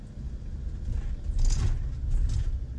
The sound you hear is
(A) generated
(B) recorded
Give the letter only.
B